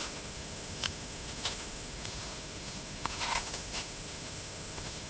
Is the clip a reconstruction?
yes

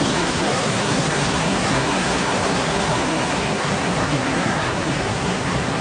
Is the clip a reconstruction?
yes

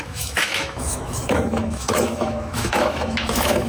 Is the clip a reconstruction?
yes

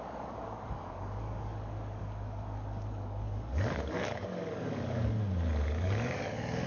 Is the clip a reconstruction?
yes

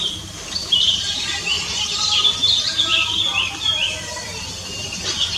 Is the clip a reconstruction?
yes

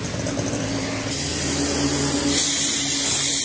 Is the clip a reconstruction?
no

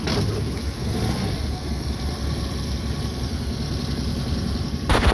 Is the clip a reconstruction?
no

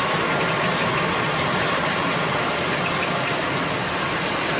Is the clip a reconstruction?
no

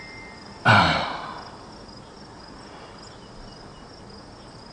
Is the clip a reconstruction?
no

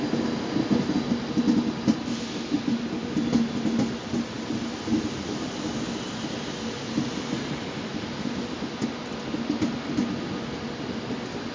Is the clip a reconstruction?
no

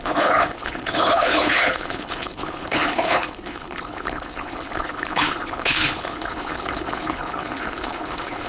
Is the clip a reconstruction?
yes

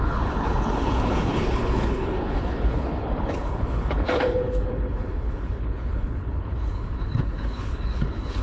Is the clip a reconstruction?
yes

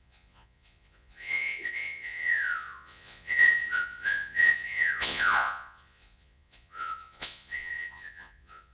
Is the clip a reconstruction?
yes